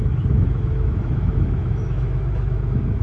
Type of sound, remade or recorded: remade